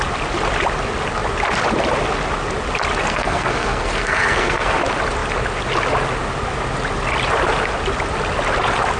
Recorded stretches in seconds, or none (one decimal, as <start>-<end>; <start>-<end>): 0.0-3.0; 4.8-9.0